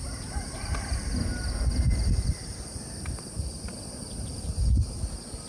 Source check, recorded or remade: recorded